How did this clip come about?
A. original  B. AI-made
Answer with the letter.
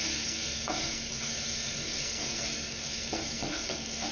B